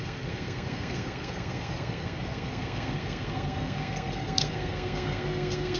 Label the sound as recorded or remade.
remade